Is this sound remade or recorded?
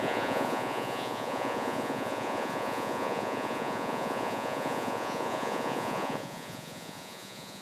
remade